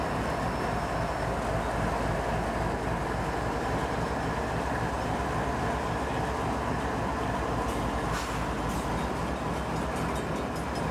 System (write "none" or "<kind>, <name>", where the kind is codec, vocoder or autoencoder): none